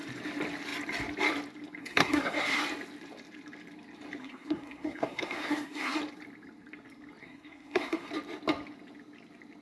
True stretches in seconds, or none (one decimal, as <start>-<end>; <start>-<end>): 0.0-1.8; 2.6-4.2; 6.0-7.2; 8.1-9.6